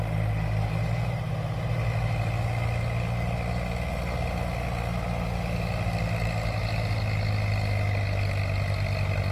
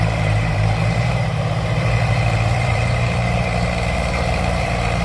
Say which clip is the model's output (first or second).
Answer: second